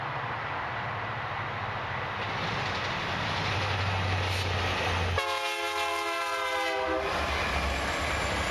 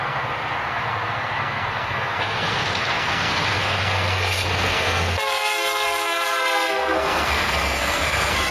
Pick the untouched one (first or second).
first